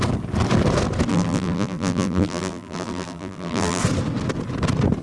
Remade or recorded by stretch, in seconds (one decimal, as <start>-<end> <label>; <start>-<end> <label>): 0.0-1.1 recorded; 1.1-3.8 remade; 3.8-5.0 recorded

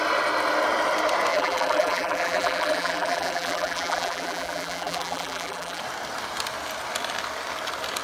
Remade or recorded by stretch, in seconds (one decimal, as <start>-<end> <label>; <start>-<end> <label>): 0.0-1.3 recorded; 1.3-5.8 remade; 5.8-8.0 recorded

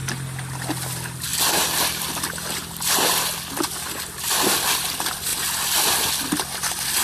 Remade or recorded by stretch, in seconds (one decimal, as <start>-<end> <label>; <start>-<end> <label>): 0.0-1.3 recorded; 1.3-3.2 remade; 3.2-7.0 recorded